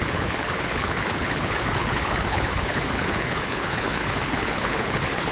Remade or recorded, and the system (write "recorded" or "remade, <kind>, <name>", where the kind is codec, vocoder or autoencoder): remade, codec, HILCodec